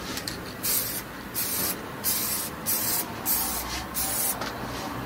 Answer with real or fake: real